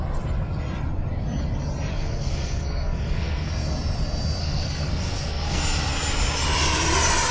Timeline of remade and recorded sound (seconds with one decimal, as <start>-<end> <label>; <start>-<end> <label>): 0.0-1.9 recorded; 1.9-3.5 remade; 3.5-4.4 recorded; 4.4-5.6 remade; 5.6-7.3 recorded